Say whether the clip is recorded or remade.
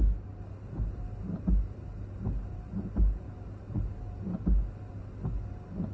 recorded